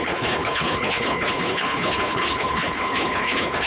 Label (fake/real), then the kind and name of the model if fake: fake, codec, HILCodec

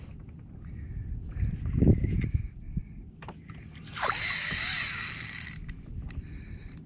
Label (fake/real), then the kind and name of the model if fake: real